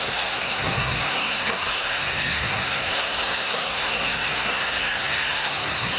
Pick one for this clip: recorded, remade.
remade